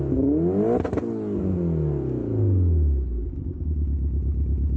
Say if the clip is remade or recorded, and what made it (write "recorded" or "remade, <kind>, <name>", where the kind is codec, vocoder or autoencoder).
recorded